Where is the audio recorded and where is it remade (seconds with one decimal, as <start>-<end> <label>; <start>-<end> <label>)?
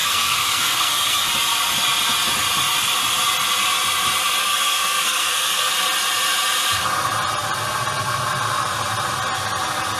0.0-1.3 remade; 1.3-4.4 recorded; 4.4-5.7 remade; 5.7-10.0 recorded